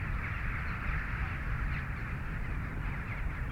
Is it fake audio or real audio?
real